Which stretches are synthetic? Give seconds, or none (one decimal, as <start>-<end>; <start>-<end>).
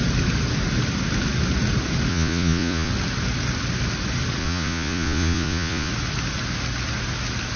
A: 2.1-2.9; 4.4-5.9